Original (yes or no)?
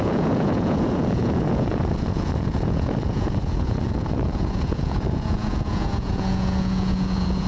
no